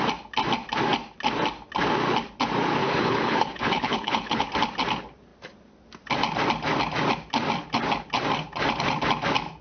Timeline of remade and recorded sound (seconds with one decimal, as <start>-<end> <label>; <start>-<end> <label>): 0.0-2.8 recorded; 2.8-4.5 remade; 4.5-9.6 recorded